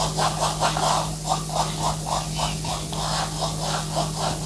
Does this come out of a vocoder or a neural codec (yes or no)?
no